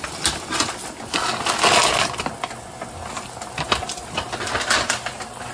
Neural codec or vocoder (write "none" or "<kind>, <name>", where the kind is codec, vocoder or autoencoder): none